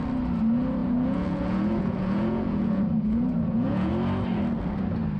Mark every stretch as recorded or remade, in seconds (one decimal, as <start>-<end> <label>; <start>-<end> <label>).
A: 0.0-0.8 recorded; 0.8-3.9 remade; 3.9-5.2 recorded